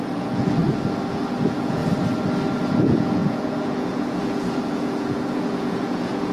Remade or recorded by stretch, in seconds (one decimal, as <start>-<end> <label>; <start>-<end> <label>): 0.0-0.6 remade; 0.6-1.1 recorded; 1.1-1.8 remade; 1.8-2.7 recorded; 2.7-6.3 remade